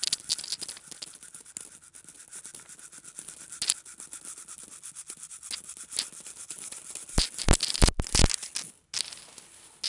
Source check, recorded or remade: recorded